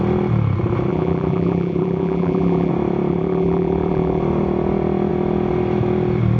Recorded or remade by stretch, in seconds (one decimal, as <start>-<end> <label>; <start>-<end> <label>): 0.0-0.9 recorded; 0.9-2.7 remade; 2.7-3.1 recorded; 3.1-4.2 remade; 4.2-6.4 recorded